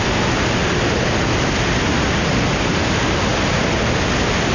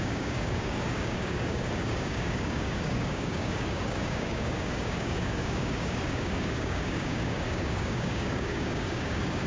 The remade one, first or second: second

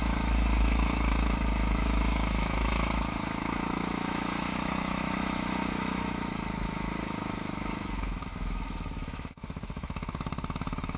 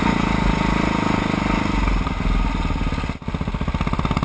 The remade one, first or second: first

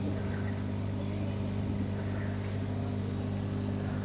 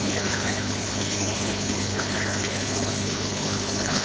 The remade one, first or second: second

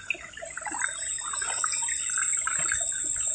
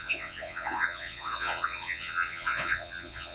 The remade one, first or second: second